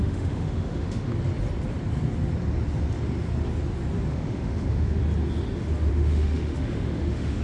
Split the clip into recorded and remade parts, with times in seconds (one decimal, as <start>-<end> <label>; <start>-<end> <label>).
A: 0.0-1.1 remade; 1.1-4.1 recorded; 4.1-5.0 remade; 5.0-5.9 recorded; 5.9-7.4 remade